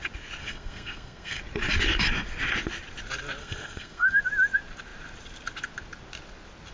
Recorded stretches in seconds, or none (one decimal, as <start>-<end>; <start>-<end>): 0.0-0.4; 1.4-3.4; 4.2-6.7